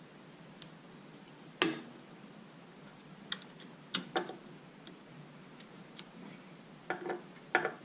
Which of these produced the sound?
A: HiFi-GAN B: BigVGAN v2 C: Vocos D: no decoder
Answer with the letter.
D